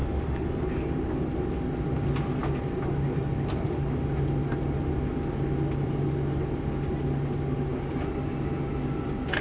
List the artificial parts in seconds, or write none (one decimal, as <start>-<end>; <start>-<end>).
0.0-0.6